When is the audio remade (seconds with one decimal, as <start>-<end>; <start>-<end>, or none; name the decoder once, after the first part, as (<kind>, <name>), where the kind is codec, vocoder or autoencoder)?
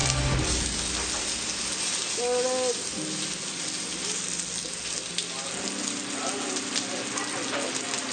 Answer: none